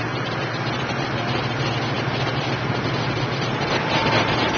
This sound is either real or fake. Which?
real